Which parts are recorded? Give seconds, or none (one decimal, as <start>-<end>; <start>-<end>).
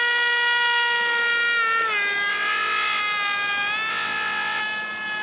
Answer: 0.0-2.3; 3.0-3.9; 4.6-5.2